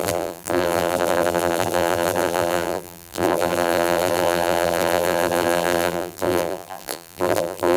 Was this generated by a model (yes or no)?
yes